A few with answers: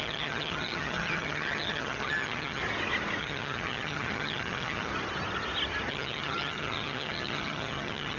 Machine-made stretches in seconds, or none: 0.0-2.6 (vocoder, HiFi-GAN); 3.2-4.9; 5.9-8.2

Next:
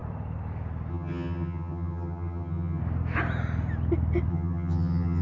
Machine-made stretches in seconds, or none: 0.9-2.8 (vocoder, HiFi-GAN); 4.3-5.2